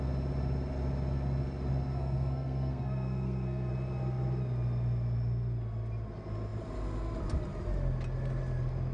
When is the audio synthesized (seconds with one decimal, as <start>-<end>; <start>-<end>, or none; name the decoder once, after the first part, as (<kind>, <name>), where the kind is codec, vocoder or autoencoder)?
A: 1.9-3.7 (codec, SNAC)